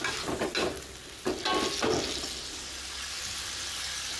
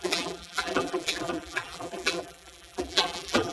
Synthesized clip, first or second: second